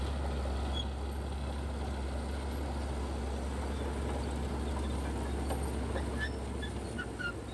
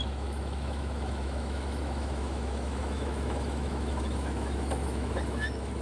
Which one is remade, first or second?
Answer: second